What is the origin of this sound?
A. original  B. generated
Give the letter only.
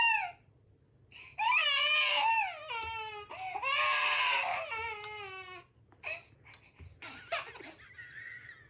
A